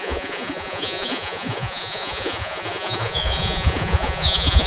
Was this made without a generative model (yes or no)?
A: no